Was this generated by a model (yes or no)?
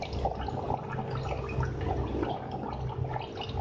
no